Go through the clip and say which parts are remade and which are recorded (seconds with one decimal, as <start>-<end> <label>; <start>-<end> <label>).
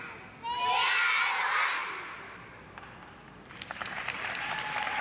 0.0-5.0 recorded